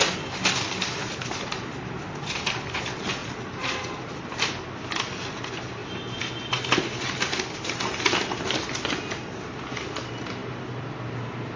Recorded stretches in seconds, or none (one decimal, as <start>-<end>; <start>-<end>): 0.0-3.2; 4.3-11.6